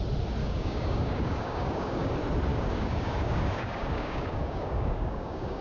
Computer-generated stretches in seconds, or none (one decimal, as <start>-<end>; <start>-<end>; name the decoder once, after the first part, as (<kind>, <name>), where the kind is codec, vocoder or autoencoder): 0.4-2.1 (codec, DAC); 2.5-5.6